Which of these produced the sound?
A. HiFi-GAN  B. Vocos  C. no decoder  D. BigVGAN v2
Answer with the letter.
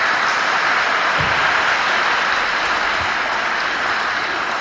C